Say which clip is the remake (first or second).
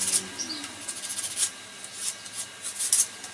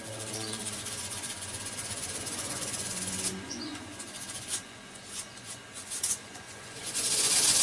second